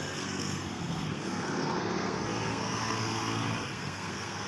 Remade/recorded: remade